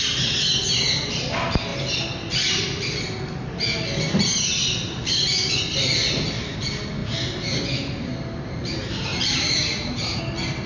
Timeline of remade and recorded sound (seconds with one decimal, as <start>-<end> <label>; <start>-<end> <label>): 0.0-9.1 recorded; 9.1-10.2 remade; 10.2-10.7 recorded